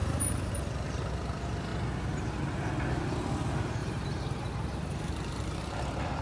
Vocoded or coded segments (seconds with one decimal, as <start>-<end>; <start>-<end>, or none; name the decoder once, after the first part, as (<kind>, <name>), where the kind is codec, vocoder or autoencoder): 0.0-0.5 (vocoder, BigVGAN v2); 3.8-5.7